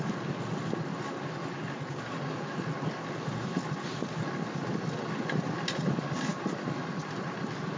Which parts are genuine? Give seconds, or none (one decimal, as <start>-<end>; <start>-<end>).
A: 0.0-7.8

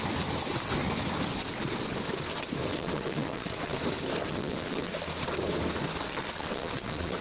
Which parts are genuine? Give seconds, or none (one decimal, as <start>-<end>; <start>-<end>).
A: 0.0-2.7; 3.8-4.3; 4.9-6.0